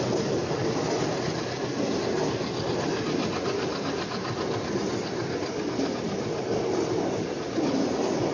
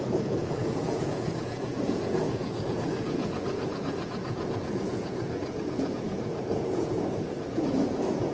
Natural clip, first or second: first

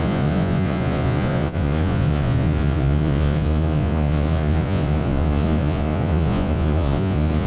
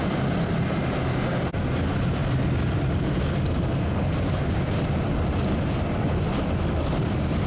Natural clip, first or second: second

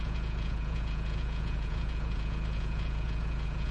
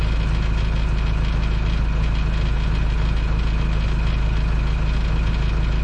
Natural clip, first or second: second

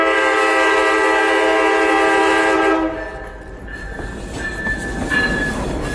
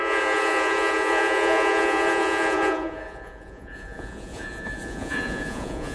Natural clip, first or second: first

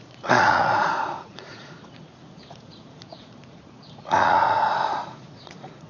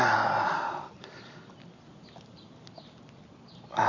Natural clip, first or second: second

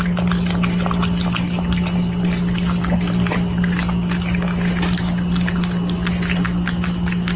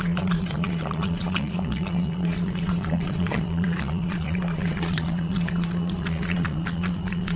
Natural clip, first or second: first